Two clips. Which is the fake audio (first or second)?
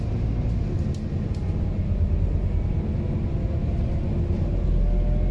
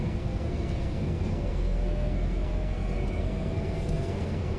second